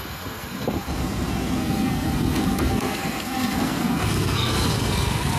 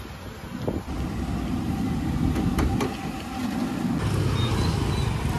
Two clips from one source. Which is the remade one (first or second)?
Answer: first